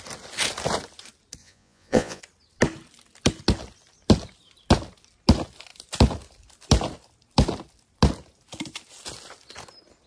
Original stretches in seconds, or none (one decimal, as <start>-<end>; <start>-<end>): 0.0-1.4; 2.2-10.1